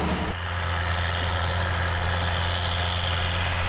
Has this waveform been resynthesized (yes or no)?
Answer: no